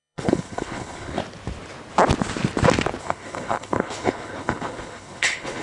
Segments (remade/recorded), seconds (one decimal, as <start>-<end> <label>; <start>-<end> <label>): 0.0-1.2 remade; 1.2-3.0 recorded; 3.0-5.6 remade